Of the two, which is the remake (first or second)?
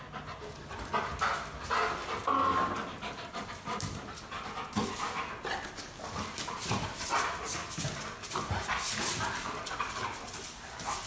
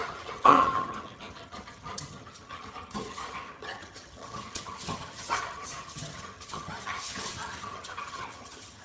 second